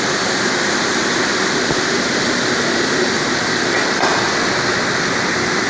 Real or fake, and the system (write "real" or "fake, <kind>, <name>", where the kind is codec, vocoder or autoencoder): real